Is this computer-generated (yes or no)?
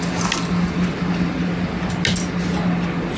no